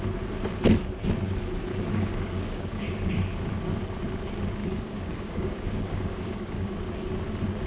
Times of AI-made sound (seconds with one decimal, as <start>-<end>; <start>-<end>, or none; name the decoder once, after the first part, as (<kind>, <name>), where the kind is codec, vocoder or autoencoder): 1.7-3.1 (codec, DAC); 4.6-6.8